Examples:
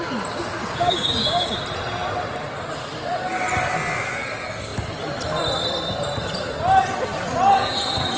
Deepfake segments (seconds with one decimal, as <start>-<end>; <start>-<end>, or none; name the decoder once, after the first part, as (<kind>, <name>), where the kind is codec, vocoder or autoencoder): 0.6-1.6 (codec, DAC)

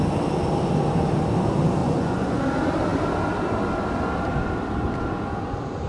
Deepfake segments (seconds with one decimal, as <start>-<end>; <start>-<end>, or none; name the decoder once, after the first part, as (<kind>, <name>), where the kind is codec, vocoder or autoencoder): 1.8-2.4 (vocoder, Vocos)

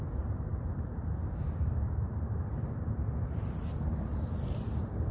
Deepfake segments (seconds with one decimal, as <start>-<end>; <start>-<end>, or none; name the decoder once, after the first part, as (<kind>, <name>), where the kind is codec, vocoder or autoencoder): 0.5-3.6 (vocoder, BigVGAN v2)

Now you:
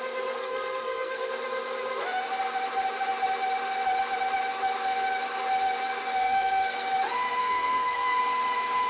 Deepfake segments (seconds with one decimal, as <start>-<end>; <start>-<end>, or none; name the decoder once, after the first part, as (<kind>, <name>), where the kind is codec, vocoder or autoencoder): 0.4-1.3 (codec, SNAC); 6.2-6.9; 7.4-8.2